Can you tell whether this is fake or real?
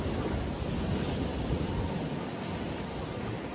real